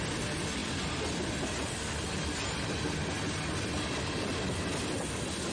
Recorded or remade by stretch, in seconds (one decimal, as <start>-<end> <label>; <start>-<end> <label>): 0.0-5.5 recorded